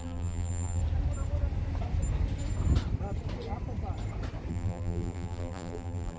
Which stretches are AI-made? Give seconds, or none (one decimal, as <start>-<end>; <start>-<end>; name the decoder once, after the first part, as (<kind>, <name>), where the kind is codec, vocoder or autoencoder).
0.0-0.8 (vocoder, BigVGAN v2); 4.5-6.2

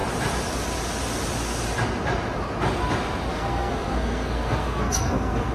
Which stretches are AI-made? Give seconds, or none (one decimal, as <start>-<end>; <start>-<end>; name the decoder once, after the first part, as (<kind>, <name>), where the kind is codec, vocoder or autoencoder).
3.3-5.5 (codec, SNAC)